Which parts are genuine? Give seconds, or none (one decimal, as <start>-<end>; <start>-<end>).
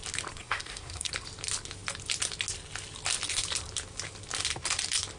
0.0-0.4; 1.1-5.2